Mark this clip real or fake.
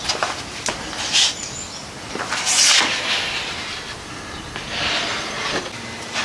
real